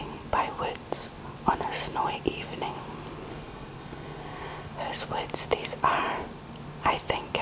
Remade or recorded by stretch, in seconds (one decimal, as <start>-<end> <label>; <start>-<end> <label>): 0.0-3.3 recorded; 3.3-4.7 remade; 4.7-7.4 recorded